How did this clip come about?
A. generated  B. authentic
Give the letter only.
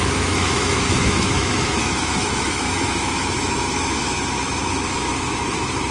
A